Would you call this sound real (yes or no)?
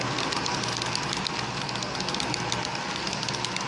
yes